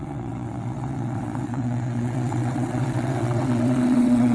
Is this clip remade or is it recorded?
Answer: remade